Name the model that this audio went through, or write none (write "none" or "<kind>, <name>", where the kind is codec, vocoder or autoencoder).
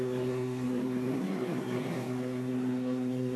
codec, SNAC